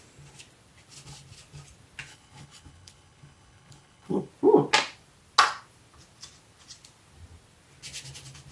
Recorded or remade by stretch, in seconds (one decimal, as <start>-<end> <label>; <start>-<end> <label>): 0.0-2.1 recorded; 2.1-4.3 remade; 4.3-8.5 recorded